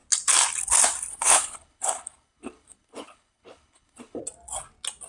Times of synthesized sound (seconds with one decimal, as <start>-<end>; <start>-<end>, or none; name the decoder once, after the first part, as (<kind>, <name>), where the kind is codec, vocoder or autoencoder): 1.1-4.2 (codec, HILCodec)